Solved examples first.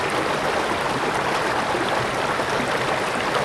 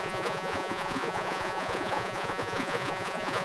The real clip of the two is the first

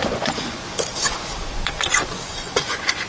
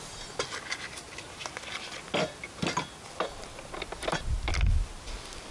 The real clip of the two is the second